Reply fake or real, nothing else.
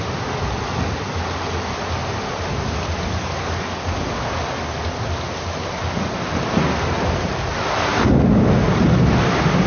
real